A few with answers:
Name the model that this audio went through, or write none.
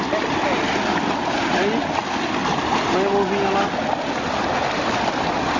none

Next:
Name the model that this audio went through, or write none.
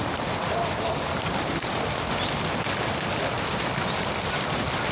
none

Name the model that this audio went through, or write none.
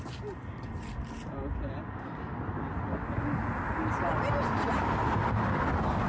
none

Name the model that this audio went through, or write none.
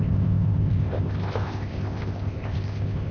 codec, ZipCodec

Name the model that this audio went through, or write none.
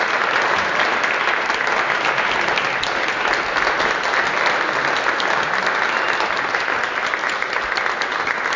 none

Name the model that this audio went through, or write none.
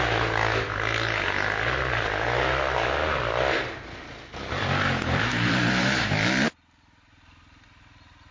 none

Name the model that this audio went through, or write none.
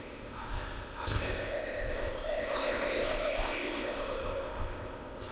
codec, ZipCodec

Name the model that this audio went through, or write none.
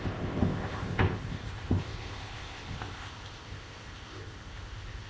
codec, ZipCodec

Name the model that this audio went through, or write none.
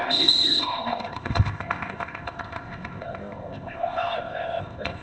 codec, ZipCodec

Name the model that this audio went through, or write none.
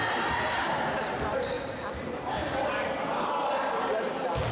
none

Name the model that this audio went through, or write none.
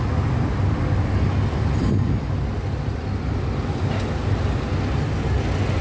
none